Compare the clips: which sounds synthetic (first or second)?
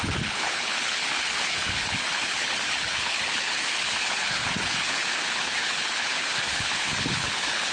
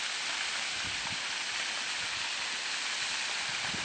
first